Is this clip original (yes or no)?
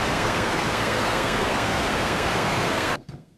no